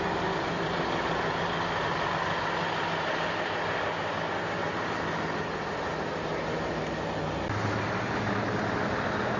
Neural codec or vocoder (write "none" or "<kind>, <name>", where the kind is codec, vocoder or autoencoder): none